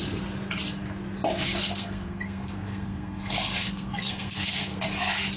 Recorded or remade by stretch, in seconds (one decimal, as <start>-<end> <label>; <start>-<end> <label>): 0.0-1.6 recorded; 1.6-4.8 remade; 4.8-5.4 recorded